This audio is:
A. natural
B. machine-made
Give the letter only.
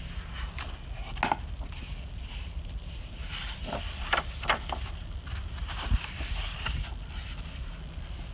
A